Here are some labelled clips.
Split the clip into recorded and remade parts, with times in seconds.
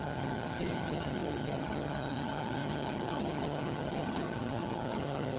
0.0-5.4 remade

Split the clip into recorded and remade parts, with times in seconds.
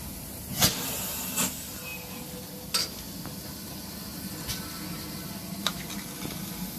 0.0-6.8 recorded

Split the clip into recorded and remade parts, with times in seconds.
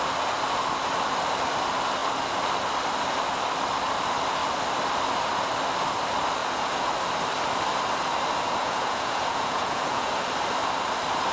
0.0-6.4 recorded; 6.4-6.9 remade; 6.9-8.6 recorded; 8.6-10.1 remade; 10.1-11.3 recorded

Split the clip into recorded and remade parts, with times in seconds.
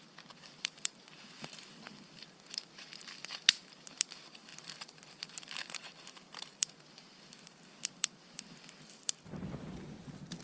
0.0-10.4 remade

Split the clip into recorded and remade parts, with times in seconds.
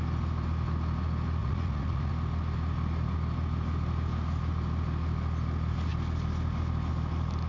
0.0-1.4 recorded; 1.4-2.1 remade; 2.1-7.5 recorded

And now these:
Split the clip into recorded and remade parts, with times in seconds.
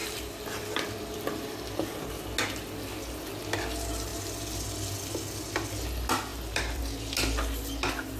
0.0-2.1 remade; 2.1-6.3 recorded; 6.3-6.8 remade; 6.8-8.2 recorded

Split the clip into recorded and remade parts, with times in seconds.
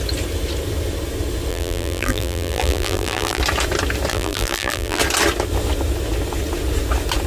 0.0-1.5 recorded; 1.5-3.4 remade; 3.4-4.1 recorded; 4.1-5.0 remade; 5.0-7.3 recorded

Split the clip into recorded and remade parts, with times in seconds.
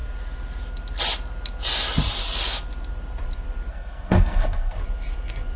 0.0-3.7 recorded; 3.7-4.8 remade; 4.8-5.6 recorded